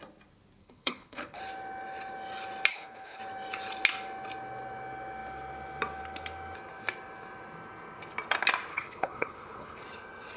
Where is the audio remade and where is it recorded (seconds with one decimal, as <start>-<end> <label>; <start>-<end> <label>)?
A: 0.0-0.6 recorded; 0.6-1.4 remade; 1.4-2.7 recorded; 2.7-3.2 remade; 3.2-8.7 recorded; 8.7-9.8 remade; 9.8-10.4 recorded